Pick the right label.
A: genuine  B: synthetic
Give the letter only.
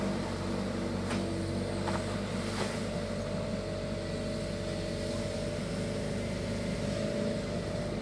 A